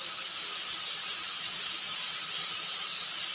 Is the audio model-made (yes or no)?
no